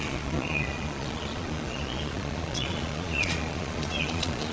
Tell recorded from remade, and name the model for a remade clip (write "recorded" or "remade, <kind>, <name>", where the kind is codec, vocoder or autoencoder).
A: remade, vocoder, Vocos